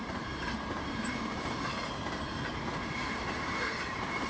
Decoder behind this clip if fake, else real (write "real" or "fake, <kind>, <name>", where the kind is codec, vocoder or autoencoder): fake, vocoder, BigVGAN v2